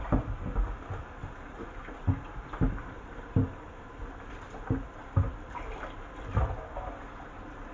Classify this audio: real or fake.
real